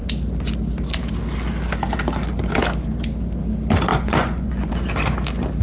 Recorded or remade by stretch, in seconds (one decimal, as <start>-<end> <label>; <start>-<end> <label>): 0.0-3.9 recorded; 3.9-4.7 remade; 4.7-5.6 recorded